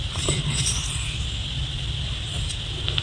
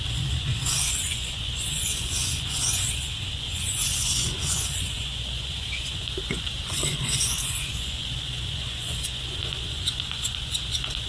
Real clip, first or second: first